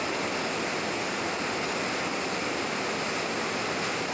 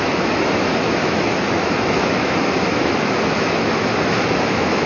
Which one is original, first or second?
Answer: first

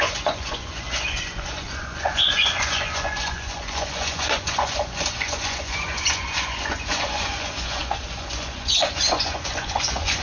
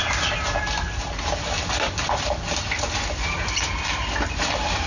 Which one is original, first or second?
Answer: second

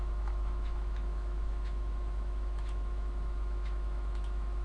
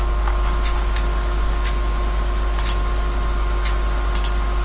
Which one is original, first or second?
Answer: second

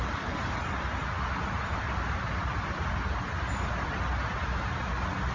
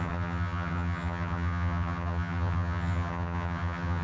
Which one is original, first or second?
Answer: first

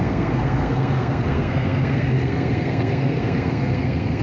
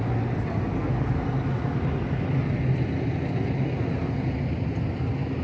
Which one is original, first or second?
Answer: second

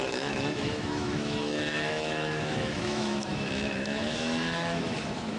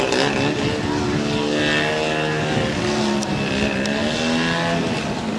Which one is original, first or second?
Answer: second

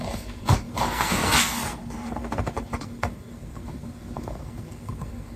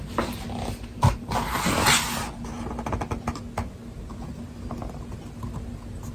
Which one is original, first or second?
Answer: second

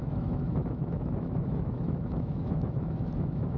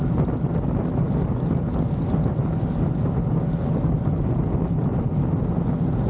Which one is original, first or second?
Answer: second